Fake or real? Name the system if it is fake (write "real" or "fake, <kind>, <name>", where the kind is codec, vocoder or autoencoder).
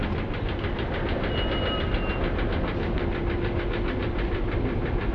real